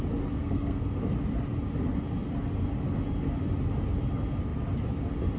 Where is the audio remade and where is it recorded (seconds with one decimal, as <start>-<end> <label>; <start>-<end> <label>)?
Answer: 0.0-0.4 recorded; 0.4-1.0 remade; 1.0-5.4 recorded